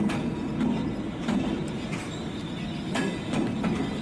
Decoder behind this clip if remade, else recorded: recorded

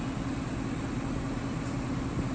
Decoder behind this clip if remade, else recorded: recorded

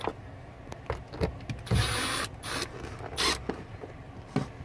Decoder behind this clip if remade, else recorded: recorded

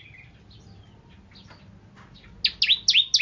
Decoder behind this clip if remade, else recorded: recorded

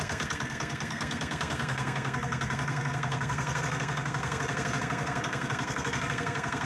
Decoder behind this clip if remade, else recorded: remade, codec, SNAC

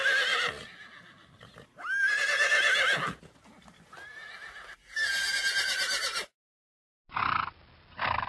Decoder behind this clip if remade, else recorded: recorded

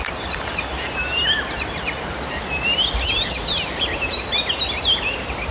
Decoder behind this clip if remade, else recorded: recorded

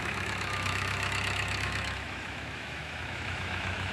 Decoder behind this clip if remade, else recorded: remade, autoencoder, DAC-VAE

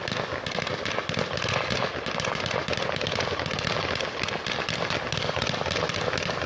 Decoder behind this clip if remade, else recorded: recorded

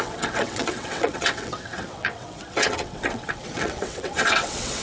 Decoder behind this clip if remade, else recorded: remade, vocoder, WaveNeXt